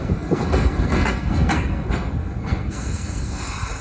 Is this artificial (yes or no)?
yes